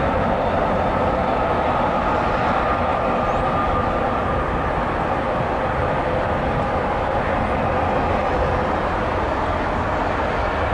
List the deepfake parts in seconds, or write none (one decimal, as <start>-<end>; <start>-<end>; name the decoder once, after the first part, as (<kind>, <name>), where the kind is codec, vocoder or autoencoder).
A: none